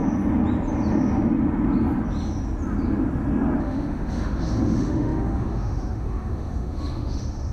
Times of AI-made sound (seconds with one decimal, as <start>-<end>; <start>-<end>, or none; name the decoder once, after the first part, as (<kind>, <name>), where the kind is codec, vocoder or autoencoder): 3.6-7.5 (autoencoder, DAC-VAE)